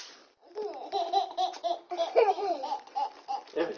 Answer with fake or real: fake